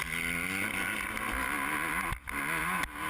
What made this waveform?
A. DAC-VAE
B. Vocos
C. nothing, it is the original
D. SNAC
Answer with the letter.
C